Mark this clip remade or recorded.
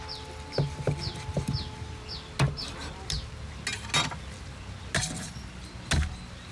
recorded